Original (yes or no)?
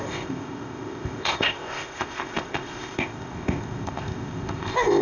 no